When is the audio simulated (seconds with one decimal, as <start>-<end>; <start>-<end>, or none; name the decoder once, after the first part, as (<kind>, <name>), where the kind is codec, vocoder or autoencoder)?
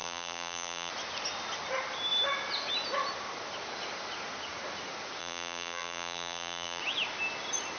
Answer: 0.0-0.9 (vocoder, BigVGAN v2); 5.2-6.8